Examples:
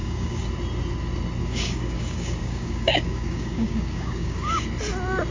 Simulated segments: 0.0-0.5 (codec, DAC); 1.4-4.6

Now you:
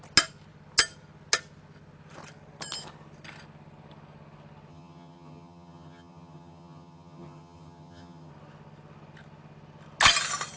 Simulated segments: 4.7-8.3 (vocoder, HiFi-GAN)

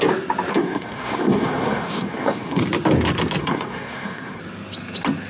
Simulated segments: 0.5-2.6 (codec, SNAC); 3.4-4.4

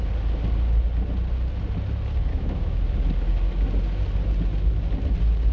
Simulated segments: 2.3-2.8 (autoencoder, DAC-VAE)